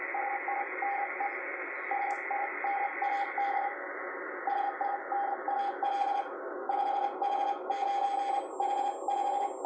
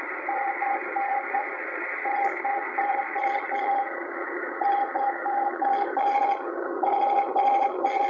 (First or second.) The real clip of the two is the first